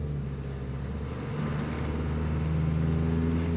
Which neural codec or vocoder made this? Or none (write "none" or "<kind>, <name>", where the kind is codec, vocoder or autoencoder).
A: none